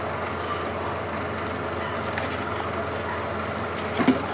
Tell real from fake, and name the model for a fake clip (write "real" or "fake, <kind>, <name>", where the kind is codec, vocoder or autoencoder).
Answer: real